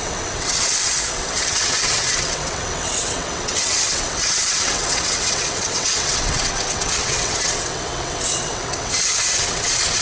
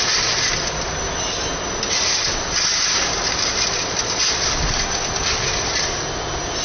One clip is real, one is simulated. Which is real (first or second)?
second